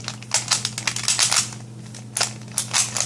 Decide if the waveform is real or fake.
real